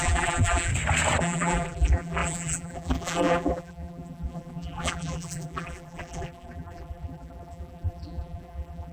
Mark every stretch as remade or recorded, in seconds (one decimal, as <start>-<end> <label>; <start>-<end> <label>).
0.0-0.7 remade; 0.7-1.2 recorded; 1.2-8.9 remade